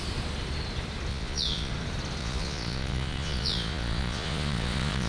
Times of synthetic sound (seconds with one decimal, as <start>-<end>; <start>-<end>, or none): 1.1-1.7; 2.2-5.1